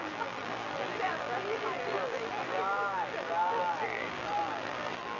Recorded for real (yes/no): no